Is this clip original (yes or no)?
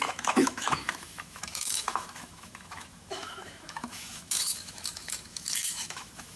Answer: no